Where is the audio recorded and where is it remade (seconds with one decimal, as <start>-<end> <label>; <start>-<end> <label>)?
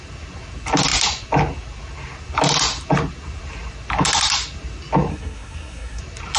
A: 0.0-5.1 recorded; 5.1-6.0 remade; 6.0-6.4 recorded